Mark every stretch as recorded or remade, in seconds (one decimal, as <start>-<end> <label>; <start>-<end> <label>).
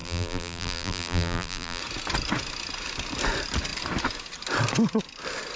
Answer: 0.0-1.8 remade; 1.8-5.6 recorded